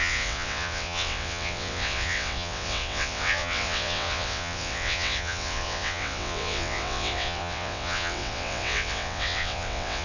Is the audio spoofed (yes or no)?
yes